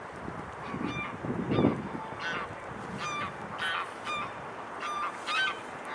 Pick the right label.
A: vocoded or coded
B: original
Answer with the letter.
B